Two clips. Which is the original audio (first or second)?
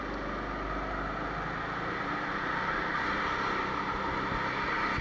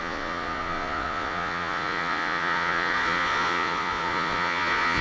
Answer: first